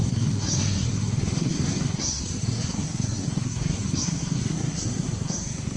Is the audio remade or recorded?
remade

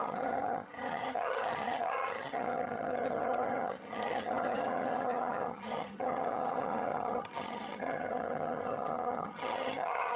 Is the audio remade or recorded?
remade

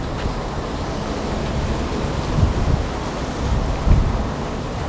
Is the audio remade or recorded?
recorded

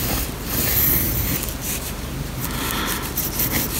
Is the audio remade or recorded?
recorded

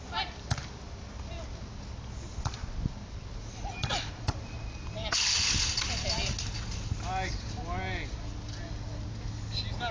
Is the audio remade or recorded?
recorded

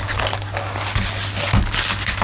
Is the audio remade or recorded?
recorded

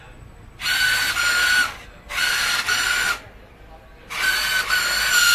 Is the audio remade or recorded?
recorded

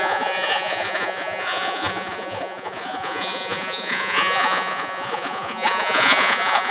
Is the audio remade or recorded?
remade